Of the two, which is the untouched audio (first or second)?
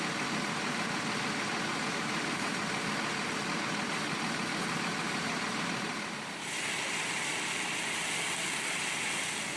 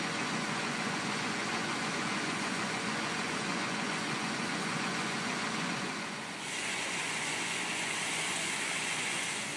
first